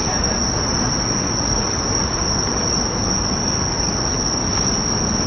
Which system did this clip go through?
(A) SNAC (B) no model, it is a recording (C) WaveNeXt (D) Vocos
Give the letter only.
B